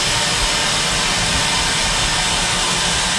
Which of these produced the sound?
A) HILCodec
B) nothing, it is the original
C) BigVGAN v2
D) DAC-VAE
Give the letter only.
B